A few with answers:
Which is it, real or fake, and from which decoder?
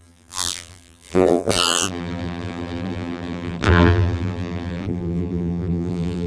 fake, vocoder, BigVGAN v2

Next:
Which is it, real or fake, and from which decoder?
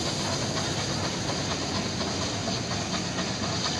real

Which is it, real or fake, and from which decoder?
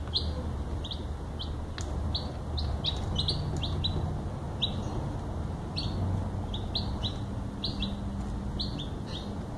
real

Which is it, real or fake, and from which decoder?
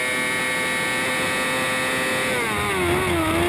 real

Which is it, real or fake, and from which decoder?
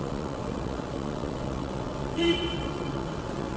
fake, vocoder, WaveNeXt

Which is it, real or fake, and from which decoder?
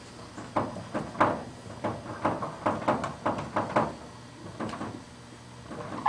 real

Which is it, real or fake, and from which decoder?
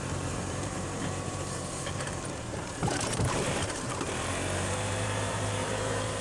fake, vocoder, BigVGAN v2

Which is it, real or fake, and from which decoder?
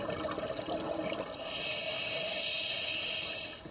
real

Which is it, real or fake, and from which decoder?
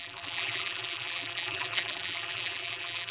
fake, vocoder, BigVGAN v2